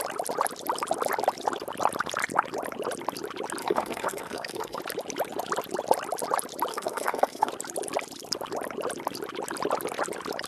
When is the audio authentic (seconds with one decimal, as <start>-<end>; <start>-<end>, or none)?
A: 0.0-3.6; 4.8-6.7; 7.5-10.5